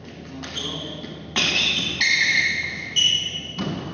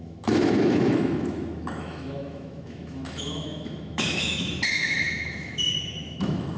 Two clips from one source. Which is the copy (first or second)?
second